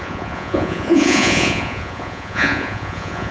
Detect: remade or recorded remade